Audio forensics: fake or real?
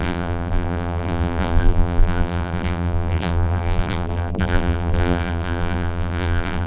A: fake